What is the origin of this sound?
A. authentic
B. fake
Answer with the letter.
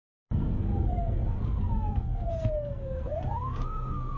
B